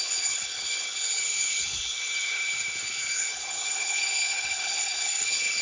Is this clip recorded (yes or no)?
no